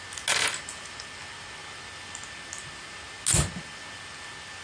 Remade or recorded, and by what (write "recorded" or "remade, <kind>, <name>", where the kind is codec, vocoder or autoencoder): recorded